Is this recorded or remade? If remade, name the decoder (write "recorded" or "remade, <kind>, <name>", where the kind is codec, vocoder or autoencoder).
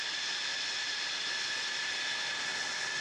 recorded